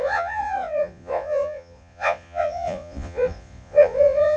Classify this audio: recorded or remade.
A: remade